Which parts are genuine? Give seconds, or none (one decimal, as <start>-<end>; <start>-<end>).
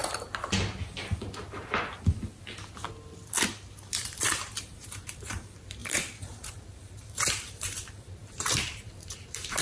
0.0-4.0